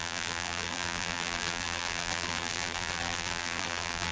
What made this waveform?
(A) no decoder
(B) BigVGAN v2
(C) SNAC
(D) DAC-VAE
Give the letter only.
B